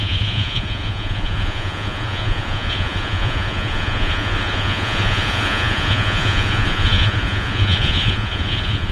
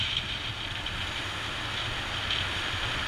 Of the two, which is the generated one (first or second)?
first